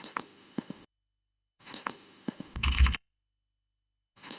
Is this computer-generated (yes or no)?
yes